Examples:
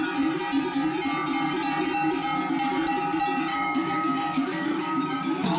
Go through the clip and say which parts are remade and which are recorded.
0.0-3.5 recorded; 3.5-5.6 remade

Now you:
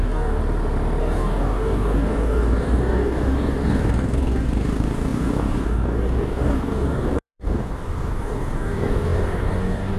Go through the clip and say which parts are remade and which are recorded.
0.0-0.4 remade; 0.4-1.0 recorded; 1.0-10.0 remade

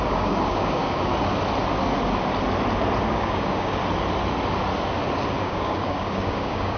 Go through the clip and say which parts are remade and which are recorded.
0.0-1.1 remade; 1.1-3.1 recorded; 3.1-3.8 remade; 3.8-5.4 recorded; 5.4-6.8 remade

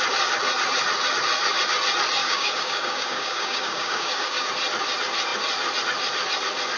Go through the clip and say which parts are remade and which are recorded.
0.0-2.2 recorded; 2.2-4.5 remade; 4.5-6.8 recorded

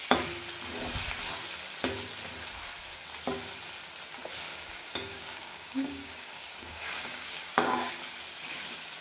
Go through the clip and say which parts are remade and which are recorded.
0.0-4.5 recorded; 4.5-7.9 remade; 7.9-9.0 recorded